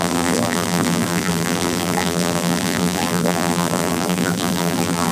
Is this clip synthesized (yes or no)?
yes